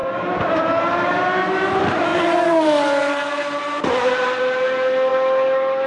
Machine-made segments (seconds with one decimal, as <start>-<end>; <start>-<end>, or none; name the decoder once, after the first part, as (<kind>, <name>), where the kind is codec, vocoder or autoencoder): 0.0-1.2 (vocoder, BigVGAN v2); 2.1-4.4